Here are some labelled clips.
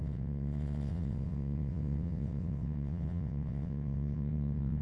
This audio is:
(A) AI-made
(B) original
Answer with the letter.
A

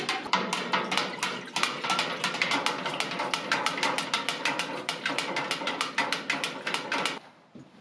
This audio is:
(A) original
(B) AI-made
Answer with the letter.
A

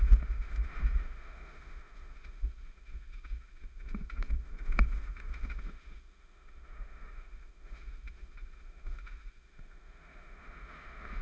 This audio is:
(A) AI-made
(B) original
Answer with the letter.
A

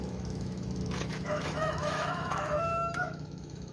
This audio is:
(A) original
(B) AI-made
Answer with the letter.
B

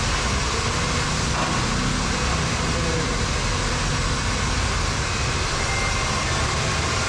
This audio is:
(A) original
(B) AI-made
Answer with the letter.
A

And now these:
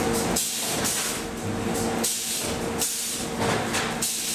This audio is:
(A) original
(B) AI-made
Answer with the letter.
A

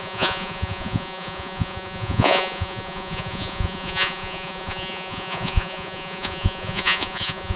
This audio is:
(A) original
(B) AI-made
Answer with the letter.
B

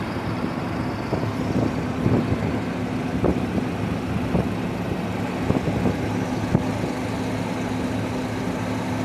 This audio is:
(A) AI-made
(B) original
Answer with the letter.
B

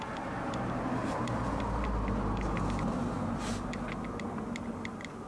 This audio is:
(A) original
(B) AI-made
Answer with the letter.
A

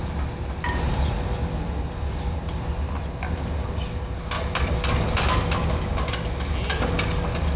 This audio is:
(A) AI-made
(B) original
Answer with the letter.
B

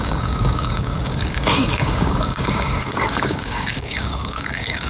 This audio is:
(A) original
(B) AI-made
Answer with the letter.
B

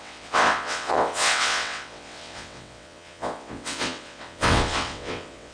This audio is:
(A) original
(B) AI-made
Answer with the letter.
B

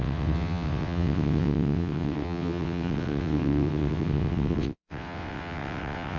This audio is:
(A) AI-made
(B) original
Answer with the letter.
A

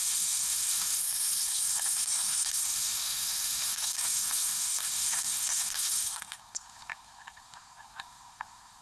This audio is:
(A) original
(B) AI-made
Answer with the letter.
B